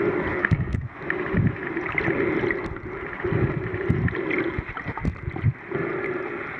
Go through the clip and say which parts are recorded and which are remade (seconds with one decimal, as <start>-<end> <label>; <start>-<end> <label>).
0.0-0.4 recorded; 0.4-0.9 remade; 0.9-6.6 recorded